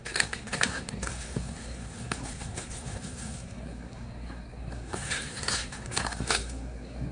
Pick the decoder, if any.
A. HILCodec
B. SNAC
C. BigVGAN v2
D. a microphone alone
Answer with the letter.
B